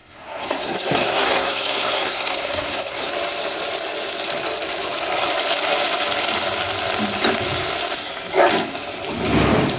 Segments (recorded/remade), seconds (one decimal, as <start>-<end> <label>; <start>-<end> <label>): 0.0-3.1 remade; 3.1-9.8 recorded